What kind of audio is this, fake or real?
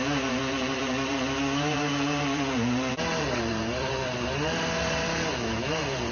fake